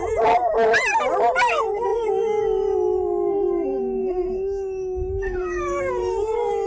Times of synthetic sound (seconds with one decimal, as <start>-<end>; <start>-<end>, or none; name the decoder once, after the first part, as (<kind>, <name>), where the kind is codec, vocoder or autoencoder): 1.5-6.7 (codec, SNAC)